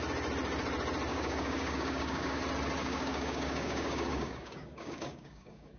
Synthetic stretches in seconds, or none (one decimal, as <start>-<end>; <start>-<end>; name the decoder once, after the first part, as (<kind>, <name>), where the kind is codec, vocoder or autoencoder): 1.1-2.4 (codec, DAC); 2.8-5.8